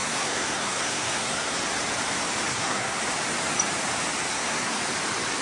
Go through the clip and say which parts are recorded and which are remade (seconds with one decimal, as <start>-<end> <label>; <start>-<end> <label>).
0.0-1.6 remade; 1.6-2.5 recorded; 2.5-3.0 remade; 3.0-4.3 recorded; 4.3-4.8 remade; 4.8-5.4 recorded